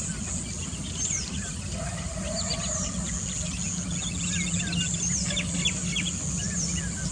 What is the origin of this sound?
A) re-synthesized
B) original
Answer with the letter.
B